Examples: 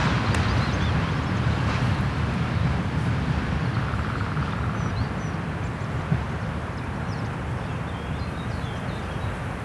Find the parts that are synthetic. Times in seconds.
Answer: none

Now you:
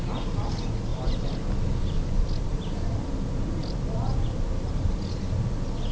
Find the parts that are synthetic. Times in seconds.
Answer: 2.5-5.2 (vocoder, BigVGAN v2)

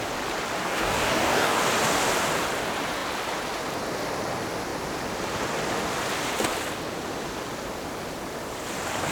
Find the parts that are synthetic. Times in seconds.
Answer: 0.6-1.6 (codec, DAC)

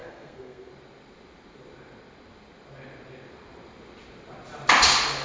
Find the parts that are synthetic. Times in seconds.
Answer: 0.0-0.7 (codec, SNAC)

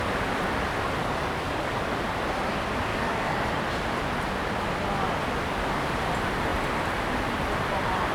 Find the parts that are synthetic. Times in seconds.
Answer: 1.0-1.8 (codec, DAC); 2.9-3.5

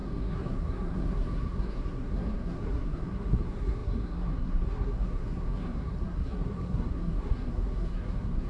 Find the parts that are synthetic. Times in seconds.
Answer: 0.0-8.5 (codec, SNAC)

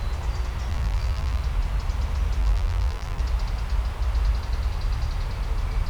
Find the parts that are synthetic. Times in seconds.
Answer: 0.7-1.4 (vocoder, BigVGAN v2); 2.4-3.2